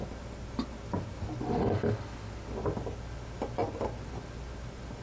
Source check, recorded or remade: recorded